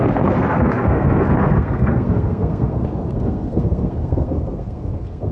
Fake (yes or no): yes